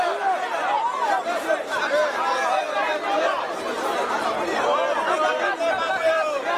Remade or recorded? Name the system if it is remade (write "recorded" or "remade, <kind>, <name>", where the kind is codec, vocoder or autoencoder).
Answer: remade, vocoder, BigVGAN v2